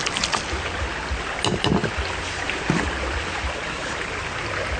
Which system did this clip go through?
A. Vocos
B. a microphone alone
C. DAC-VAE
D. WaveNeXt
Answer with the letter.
B